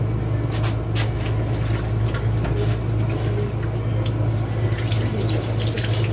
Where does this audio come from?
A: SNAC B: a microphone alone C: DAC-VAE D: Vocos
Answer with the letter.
B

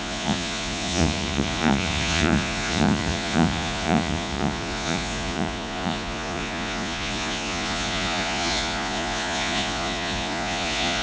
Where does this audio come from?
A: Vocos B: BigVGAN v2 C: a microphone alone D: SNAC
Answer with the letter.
A